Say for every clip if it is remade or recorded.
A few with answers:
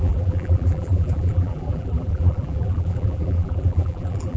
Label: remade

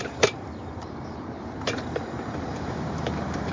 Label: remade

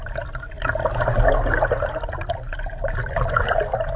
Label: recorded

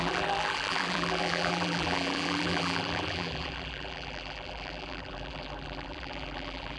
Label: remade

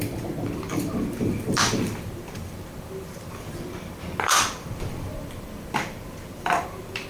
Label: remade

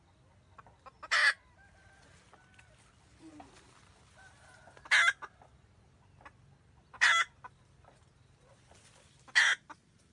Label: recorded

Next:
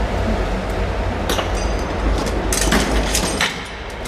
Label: recorded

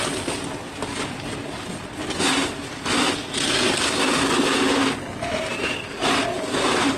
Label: recorded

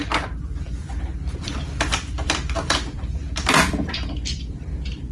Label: remade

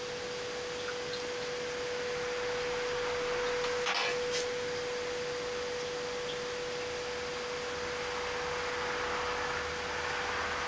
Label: recorded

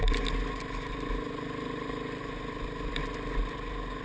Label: recorded